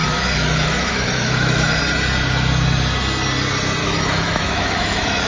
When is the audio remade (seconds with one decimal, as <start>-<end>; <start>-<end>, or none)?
0.0-1.8; 3.8-5.3